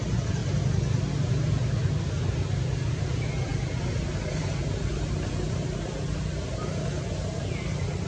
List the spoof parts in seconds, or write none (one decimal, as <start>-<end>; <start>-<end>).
none